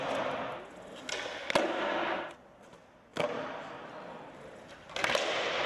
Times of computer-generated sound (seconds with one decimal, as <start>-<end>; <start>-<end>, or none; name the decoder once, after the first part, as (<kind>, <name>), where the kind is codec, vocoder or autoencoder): none

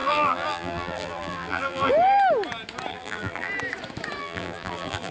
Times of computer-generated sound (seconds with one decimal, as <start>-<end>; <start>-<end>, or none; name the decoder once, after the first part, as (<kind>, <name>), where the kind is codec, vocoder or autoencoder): 0.0-1.9 (vocoder, BigVGAN v2); 2.9-3.5; 4.2-5.1

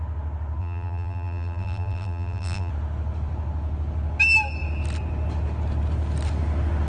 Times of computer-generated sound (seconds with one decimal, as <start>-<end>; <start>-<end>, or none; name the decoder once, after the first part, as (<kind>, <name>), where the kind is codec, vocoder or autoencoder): 0.6-2.7 (vocoder, BigVGAN v2)

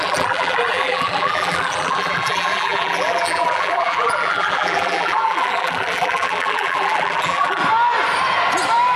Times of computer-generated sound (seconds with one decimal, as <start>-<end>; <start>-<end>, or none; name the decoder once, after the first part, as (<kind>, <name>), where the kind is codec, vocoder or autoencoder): 0.0-7.6 (vocoder, BigVGAN v2)

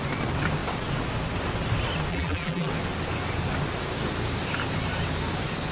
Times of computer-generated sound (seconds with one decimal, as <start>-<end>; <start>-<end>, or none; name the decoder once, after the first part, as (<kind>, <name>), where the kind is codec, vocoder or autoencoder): 2.1-2.7 (vocoder, BigVGAN v2)

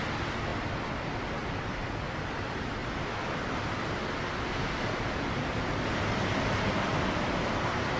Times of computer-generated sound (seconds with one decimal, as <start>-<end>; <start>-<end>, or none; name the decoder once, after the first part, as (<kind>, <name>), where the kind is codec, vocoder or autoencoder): none